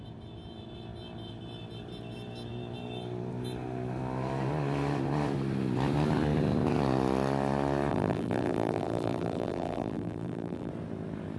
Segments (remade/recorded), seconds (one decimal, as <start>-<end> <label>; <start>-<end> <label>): 0.0-7.9 recorded; 7.9-10.7 remade; 10.7-11.4 recorded